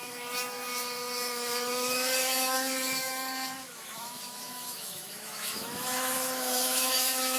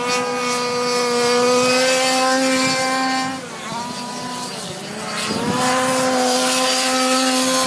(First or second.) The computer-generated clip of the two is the first